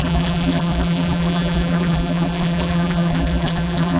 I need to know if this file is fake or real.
fake